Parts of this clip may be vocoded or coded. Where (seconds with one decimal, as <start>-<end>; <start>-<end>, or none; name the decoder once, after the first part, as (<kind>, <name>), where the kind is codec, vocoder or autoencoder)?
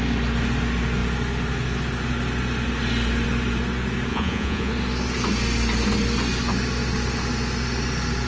4.1-4.7 (vocoder, Vocos)